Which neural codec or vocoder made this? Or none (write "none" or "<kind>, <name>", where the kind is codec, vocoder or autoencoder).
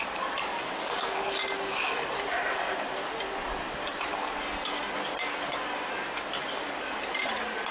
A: none